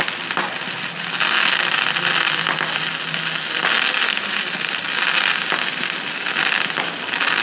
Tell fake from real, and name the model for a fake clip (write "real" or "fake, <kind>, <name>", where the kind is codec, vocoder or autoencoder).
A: real